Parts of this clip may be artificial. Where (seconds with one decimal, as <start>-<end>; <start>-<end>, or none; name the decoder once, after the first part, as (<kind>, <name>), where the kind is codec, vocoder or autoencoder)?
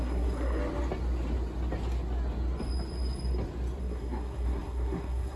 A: 0.0-0.6 (codec, SNAC); 3.8-5.4